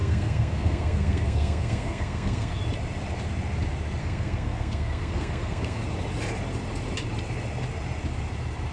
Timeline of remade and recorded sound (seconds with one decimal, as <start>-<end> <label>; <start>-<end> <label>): 0.0-2.6 remade; 2.6-4.0 recorded; 4.0-5.8 remade; 5.8-8.7 recorded